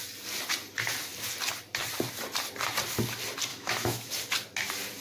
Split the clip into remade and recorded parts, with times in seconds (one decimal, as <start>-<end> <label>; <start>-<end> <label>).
0.0-3.5 recorded; 3.5-4.1 remade; 4.1-5.0 recorded